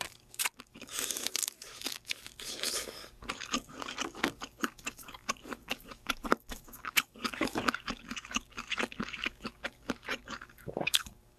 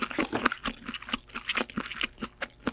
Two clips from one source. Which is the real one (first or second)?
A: second